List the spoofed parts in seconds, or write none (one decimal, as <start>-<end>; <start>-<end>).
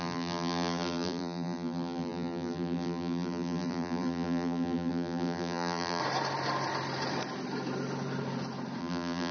0.0-6.0; 8.8-9.3